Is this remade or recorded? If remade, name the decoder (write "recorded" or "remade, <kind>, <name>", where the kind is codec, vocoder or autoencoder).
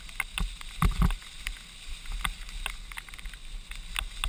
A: recorded